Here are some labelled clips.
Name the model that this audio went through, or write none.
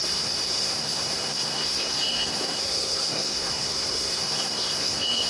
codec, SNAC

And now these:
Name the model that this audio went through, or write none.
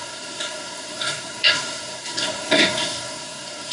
codec, SNAC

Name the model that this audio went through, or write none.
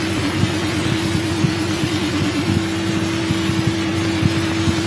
none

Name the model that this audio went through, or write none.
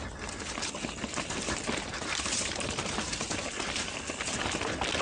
none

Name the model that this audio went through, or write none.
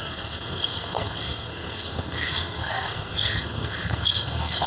codec, SNAC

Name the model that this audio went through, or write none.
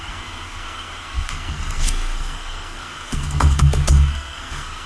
codec, SNAC